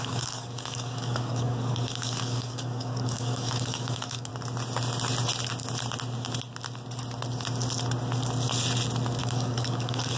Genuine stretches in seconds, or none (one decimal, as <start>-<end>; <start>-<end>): 4.3-9.2